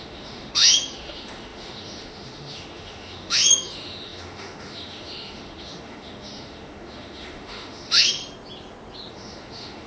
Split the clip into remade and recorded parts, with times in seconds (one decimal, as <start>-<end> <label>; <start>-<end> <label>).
0.0-8.2 remade; 8.2-9.1 recorded; 9.1-9.9 remade